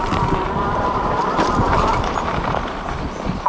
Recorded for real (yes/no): yes